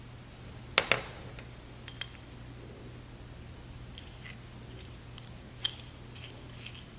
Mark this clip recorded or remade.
recorded